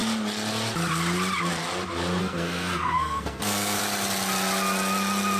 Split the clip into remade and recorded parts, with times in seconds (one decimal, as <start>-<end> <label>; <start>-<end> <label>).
0.0-2.2 recorded; 2.2-3.8 remade; 3.8-5.4 recorded